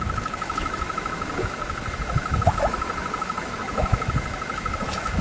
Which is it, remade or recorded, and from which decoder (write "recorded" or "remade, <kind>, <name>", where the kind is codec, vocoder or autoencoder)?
remade, autoencoder, DAC-VAE